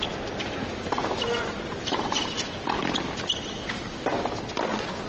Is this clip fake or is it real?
real